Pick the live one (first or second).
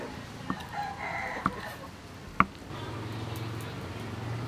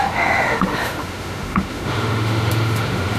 first